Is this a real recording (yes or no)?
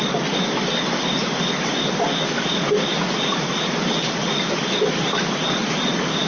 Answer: yes